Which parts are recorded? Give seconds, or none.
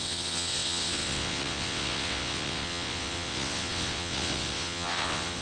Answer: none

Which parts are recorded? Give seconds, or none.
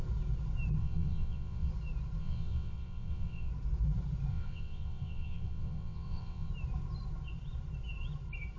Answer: 0.0-0.8; 1.7-2.2; 3.5-4.3; 6.5-8.6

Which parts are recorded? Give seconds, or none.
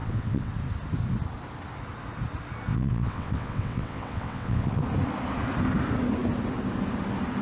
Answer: 0.5-2.7; 4.8-7.4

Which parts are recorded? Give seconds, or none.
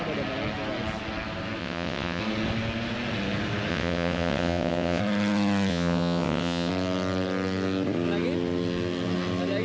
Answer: 0.0-1.6; 2.2-3.7; 5.0-5.7; 6.7-9.6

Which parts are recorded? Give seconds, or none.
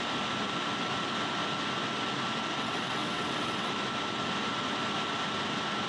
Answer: 0.0-2.6; 3.7-5.9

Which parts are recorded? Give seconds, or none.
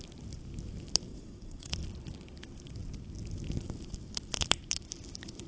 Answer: 0.0-1.1; 1.7-5.5